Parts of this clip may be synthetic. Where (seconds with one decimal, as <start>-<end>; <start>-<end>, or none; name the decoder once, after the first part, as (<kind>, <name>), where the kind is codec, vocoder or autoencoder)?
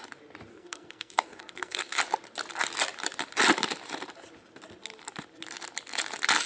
0.5-2.0 (codec, SNAC)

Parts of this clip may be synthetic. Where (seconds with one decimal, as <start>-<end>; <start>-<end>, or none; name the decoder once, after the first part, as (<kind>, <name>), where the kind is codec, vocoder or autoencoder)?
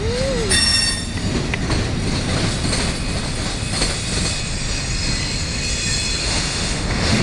6.2-7.2 (autoencoder, DAC-VAE)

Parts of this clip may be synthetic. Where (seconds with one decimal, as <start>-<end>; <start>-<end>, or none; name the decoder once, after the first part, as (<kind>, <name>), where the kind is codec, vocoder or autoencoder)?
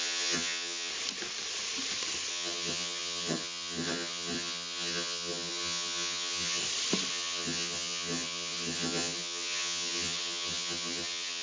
0.0-0.9 (vocoder, HiFi-GAN); 2.3-6.6; 7.1-11.4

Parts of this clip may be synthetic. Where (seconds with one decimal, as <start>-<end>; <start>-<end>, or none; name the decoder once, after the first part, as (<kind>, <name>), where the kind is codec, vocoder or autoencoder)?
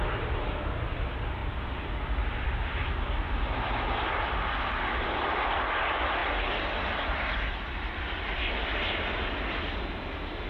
none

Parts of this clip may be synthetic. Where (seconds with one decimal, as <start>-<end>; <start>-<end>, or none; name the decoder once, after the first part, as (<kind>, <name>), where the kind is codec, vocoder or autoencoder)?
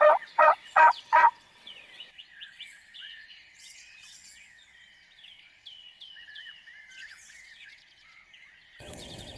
0.0-9.4 (vocoder, WaveNeXt)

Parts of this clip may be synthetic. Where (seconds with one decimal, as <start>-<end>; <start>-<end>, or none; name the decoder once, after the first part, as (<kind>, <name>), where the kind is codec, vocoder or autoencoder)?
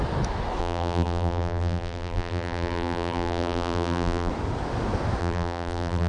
0.6-4.3 (vocoder, BigVGAN v2); 5.2-6.1